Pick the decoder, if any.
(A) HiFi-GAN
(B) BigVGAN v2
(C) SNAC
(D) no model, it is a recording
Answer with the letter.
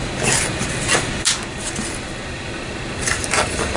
D